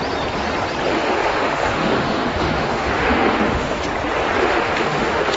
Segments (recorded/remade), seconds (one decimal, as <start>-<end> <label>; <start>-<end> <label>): 0.0-0.9 recorded; 0.9-3.8 remade; 3.8-4.4 recorded; 4.4-5.4 remade